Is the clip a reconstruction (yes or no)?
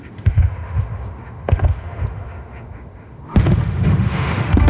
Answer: yes